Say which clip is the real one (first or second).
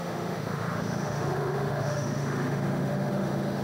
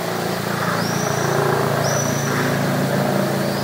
second